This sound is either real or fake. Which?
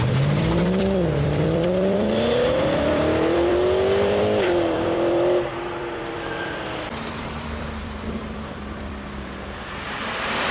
fake